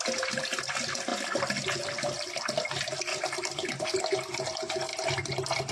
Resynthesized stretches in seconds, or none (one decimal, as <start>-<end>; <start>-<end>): 3.1-3.8